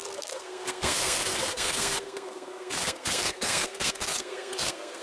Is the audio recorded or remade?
remade